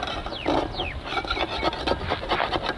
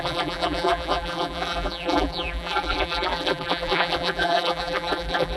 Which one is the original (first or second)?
first